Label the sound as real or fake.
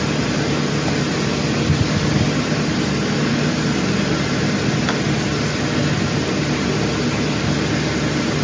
real